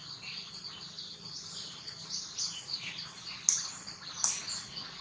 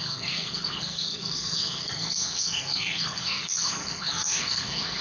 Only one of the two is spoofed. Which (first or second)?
second